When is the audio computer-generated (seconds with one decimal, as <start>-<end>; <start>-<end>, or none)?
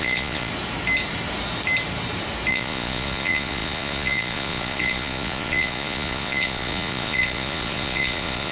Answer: 0.0-0.5; 2.5-8.5